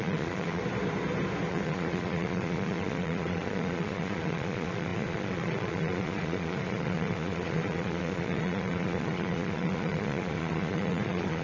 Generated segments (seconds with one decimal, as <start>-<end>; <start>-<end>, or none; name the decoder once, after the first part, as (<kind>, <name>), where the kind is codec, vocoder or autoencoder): 0.0-0.6 (vocoder, Vocos); 1.5-11.4